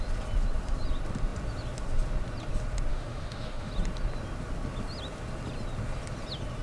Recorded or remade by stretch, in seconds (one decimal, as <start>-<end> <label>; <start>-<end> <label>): 0.0-2.9 recorded; 2.9-3.7 remade; 3.7-6.6 recorded